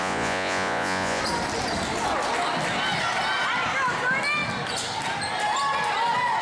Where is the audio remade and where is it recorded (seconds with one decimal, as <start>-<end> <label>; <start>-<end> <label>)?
0.0-1.2 remade; 1.2-6.4 recorded